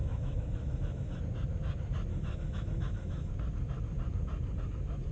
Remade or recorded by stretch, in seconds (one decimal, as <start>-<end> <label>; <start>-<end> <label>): 0.0-1.2 remade; 1.2-2.1 recorded; 2.1-3.3 remade; 3.3-5.1 recorded